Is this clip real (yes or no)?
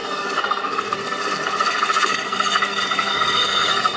no